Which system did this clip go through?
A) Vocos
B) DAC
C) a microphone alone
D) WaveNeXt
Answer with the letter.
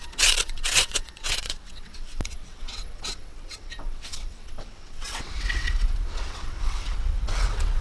D